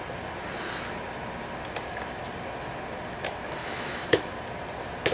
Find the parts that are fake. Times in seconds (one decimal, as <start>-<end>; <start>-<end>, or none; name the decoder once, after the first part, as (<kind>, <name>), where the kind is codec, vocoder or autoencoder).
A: 3.6-4.3 (autoencoder, DAC-VAE)